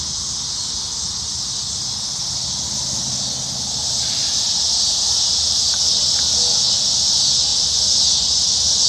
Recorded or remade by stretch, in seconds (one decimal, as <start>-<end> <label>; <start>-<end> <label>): 0.0-2.2 recorded; 2.2-6.6 remade; 6.6-7.5 recorded; 7.5-8.9 remade